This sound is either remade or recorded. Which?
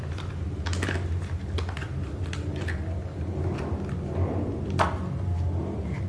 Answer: recorded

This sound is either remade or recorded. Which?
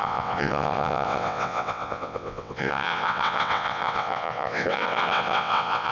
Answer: remade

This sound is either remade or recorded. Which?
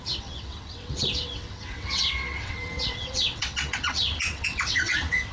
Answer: remade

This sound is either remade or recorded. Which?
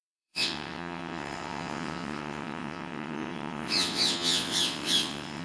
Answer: remade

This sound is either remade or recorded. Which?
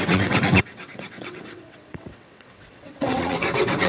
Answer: remade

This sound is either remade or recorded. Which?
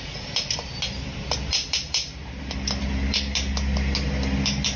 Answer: recorded